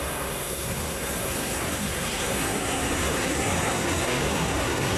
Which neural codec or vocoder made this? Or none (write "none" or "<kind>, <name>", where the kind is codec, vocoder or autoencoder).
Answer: codec, SNAC